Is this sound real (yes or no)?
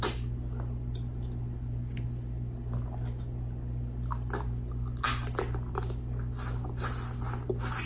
yes